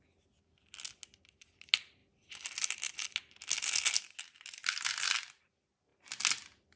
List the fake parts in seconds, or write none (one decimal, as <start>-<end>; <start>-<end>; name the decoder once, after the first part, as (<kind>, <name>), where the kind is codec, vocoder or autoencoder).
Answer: none